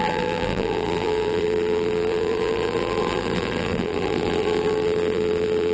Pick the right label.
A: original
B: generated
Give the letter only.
B